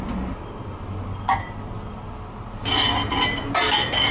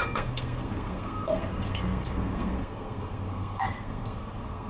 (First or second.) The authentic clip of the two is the first